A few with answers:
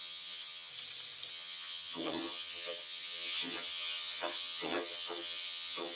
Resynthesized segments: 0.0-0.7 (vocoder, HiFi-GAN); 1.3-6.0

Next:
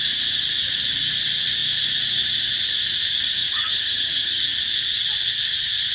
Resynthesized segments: 3.4-4.4 (vocoder, HiFi-GAN)

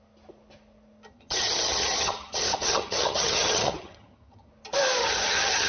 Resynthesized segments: 1.1-4.5 (vocoder, HiFi-GAN); 5.0-5.7

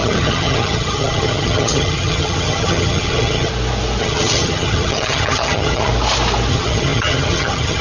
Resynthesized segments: 0.0-3.5 (vocoder, HiFi-GAN); 4.0-5.9; 6.5-7.8